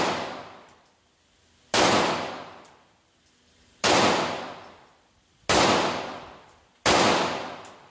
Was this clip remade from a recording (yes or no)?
no